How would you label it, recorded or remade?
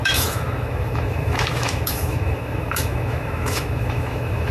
remade